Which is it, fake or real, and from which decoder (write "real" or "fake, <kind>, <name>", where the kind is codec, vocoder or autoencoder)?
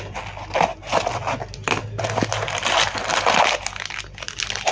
real